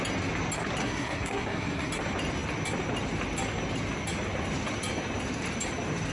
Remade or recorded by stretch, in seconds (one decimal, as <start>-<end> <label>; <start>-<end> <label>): 0.0-0.8 recorded; 0.8-1.9 remade; 1.9-6.1 recorded